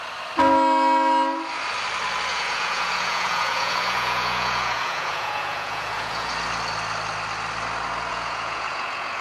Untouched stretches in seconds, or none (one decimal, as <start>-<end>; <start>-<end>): 0.0-2.3; 6.3-8.1